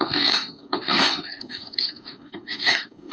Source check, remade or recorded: remade